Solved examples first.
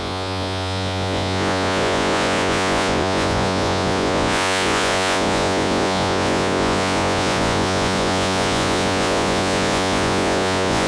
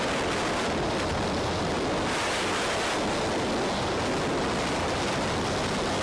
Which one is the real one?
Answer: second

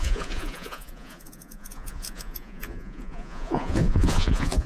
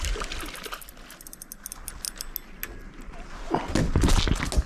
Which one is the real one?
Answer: second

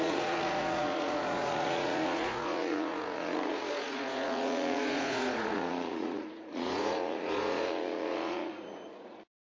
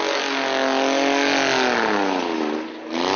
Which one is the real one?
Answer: second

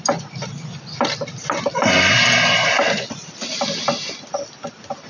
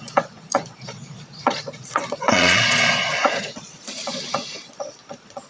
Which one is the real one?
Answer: first